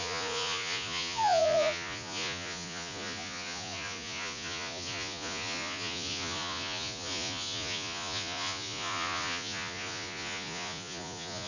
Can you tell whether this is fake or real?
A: fake